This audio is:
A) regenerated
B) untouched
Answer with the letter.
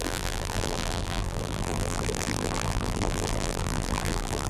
A